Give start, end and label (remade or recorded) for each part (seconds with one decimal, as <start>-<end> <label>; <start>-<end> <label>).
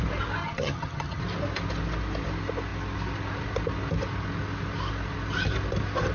0.0-0.4 recorded; 0.4-1.2 remade; 1.2-6.1 recorded